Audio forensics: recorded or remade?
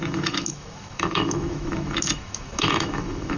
remade